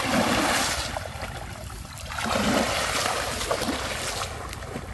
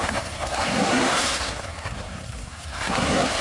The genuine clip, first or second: first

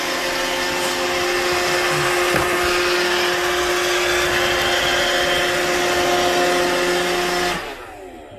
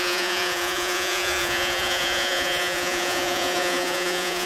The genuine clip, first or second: first